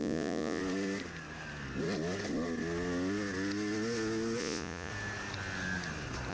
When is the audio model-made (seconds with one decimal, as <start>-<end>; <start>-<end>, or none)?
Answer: 0.0-0.6; 4.4-4.9